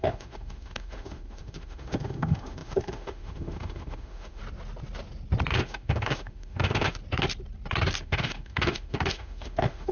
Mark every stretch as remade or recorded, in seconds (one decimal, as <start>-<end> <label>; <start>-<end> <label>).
0.0-4.4 remade; 4.4-5.5 recorded; 5.5-7.0 remade; 7.0-8.0 recorded; 8.0-9.9 remade